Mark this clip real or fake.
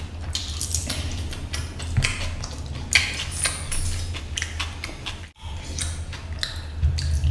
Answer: real